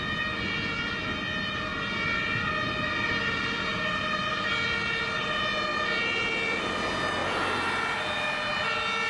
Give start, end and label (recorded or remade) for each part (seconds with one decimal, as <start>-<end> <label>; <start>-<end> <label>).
0.0-9.1 recorded